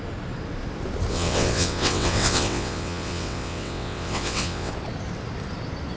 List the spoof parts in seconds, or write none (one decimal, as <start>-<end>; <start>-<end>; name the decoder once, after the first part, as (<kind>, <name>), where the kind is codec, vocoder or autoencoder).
1.1-4.7 (vocoder, WaveNeXt)